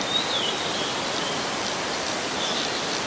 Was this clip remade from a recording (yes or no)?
yes